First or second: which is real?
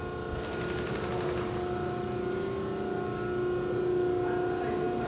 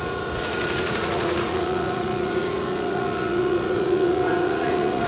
first